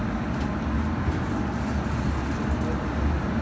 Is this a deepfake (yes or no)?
no